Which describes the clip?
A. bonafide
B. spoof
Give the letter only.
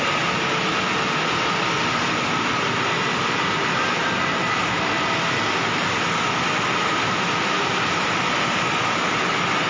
A